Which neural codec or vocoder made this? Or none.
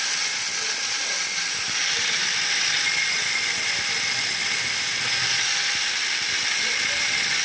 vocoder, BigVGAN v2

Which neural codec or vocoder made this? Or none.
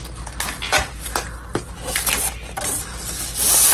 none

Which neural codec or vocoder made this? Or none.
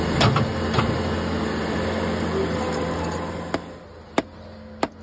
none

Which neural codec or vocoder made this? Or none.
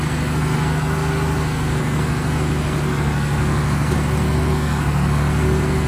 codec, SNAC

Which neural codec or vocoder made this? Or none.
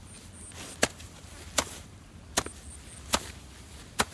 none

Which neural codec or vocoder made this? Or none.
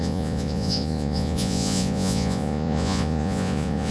vocoder, Vocos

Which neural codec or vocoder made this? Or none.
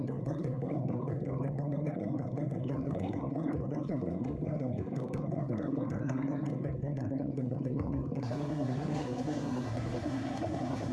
codec, SNAC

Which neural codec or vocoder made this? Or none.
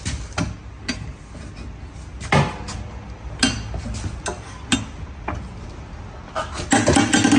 none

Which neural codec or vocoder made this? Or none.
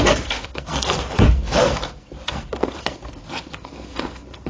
codec, SNAC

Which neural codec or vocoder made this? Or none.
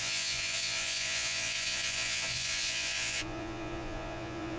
vocoder, Vocos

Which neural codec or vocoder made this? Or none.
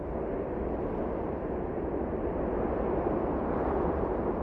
none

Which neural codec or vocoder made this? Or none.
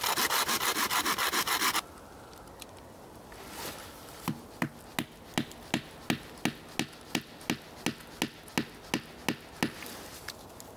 none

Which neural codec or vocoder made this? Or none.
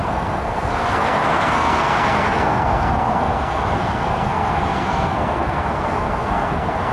codec, SNAC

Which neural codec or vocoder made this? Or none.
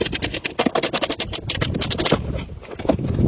none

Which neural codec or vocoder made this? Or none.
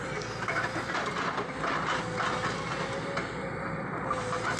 none